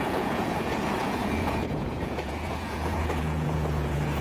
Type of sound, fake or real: fake